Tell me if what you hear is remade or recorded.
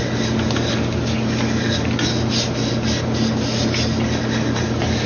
recorded